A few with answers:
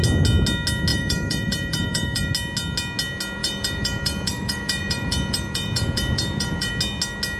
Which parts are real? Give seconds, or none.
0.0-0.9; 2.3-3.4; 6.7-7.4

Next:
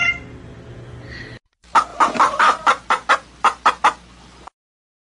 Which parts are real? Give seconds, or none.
0.0-1.9; 3.1-5.0

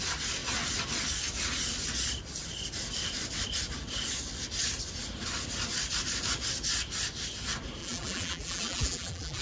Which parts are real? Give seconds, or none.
0.0-7.8

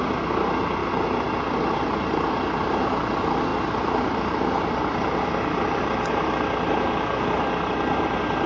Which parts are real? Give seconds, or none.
0.0-3.5; 5.8-8.5